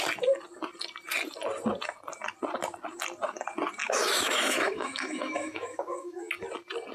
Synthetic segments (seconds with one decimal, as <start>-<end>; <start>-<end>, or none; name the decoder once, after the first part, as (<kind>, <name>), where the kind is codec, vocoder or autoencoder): 3.8-6.3 (autoencoder, DAC-VAE)